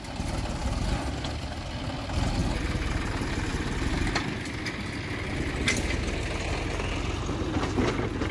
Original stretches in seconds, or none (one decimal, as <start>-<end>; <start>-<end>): 0.0-0.6; 1.1-2.4; 3.0-3.5; 4.6-8.3